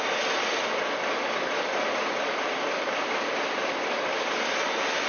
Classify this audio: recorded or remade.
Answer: recorded